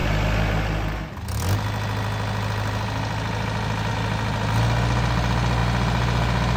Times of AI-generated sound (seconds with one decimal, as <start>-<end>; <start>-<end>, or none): none

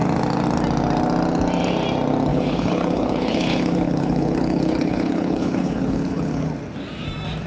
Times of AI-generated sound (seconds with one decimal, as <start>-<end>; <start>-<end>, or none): 2.3-6.5